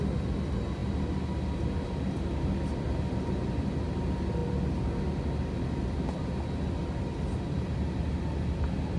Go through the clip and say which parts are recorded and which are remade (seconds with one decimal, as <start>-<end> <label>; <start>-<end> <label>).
0.0-9.0 recorded